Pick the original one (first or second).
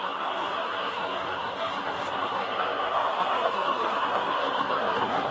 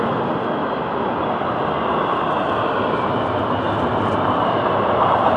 second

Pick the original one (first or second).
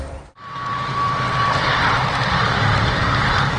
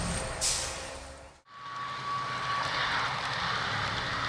second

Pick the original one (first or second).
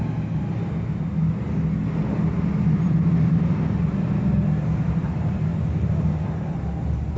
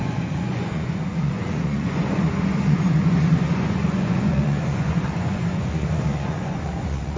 first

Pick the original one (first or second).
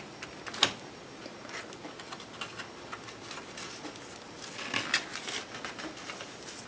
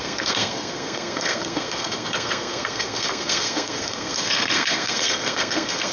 first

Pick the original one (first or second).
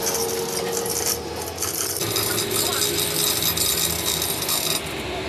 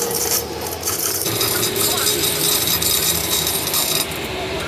first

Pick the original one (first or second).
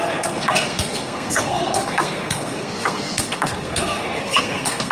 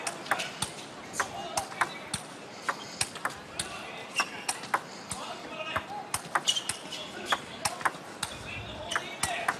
second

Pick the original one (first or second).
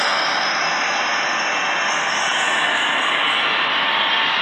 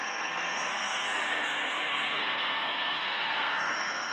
first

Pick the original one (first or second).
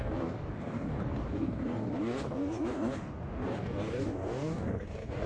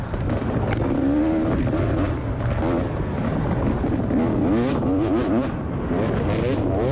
second